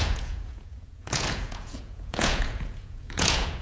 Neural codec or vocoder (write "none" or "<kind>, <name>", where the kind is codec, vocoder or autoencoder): vocoder, Vocos